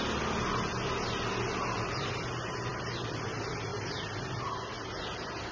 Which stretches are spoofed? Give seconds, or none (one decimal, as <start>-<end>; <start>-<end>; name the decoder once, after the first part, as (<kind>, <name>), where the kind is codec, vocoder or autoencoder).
none